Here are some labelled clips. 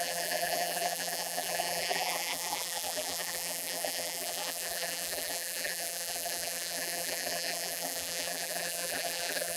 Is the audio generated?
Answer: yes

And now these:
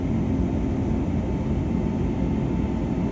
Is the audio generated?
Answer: no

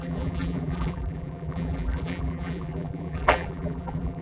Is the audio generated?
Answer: yes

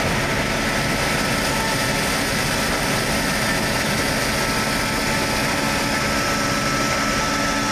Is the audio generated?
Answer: no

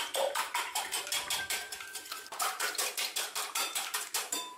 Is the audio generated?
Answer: yes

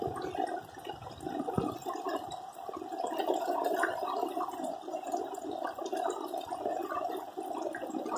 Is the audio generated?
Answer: no